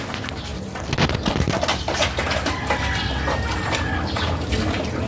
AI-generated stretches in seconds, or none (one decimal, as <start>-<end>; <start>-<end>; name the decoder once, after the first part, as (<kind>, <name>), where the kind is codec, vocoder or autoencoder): none